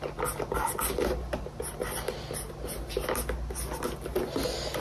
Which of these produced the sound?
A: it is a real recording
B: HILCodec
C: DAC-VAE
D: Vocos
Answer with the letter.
A